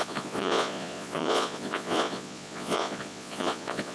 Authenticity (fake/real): fake